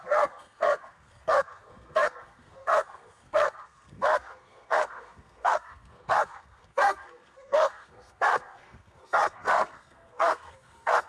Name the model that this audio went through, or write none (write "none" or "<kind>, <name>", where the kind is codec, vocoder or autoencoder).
codec, SNAC